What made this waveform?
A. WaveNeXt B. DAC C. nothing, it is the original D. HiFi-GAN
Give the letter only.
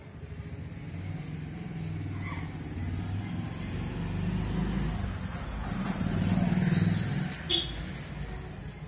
C